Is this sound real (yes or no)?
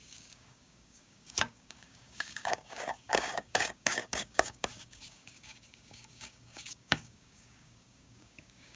no